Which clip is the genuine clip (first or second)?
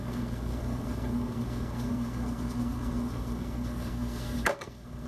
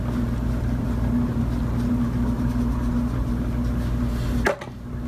second